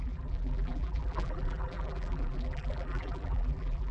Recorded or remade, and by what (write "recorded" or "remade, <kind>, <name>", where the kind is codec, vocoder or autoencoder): remade, vocoder, BigVGAN v2